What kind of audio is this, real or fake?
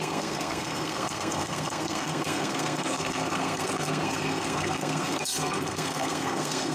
fake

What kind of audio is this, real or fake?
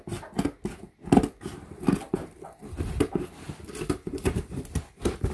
real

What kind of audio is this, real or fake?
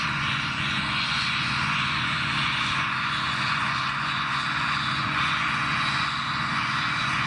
fake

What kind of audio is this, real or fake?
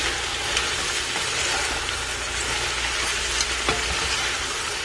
real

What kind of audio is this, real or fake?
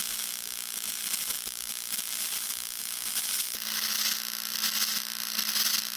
real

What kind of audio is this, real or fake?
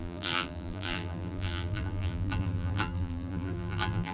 fake